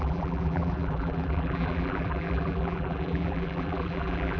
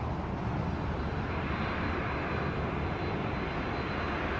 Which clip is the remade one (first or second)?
first